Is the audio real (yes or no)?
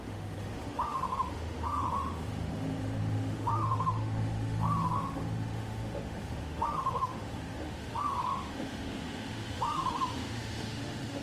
no